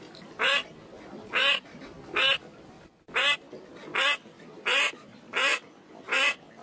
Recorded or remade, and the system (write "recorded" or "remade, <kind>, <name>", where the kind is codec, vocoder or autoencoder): recorded